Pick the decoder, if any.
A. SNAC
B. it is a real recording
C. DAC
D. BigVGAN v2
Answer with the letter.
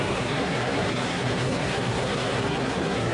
A